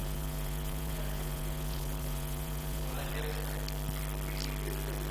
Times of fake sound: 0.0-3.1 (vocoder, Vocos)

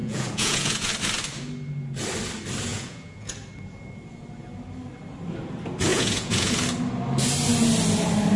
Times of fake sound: 0.0-0.9 (vocoder, Vocos); 2.7-3.3; 5.9-6.5

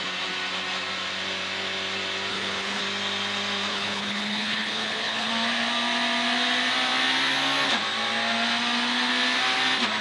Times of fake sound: 2.3-2.8 (codec, HILCodec); 3.7-5.3

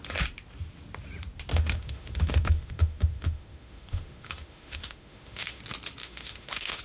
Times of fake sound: 1.5-5.6 (autoencoder, DAC-VAE); 6.0-6.8

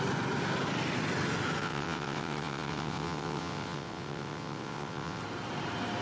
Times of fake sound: 1.6-5.2 (vocoder, WaveNeXt)

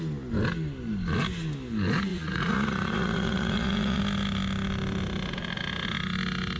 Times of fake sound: 2.1-4.0 (vocoder, Vocos)

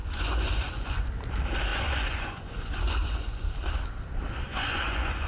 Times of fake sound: 0.0-1.1 (vocoder, Vocos); 1.7-3.5; 4.5-5.3